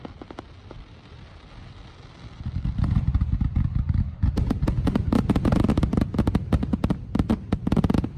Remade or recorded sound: recorded